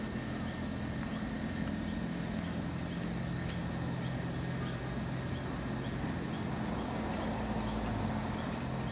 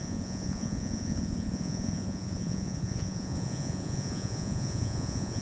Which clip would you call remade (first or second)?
second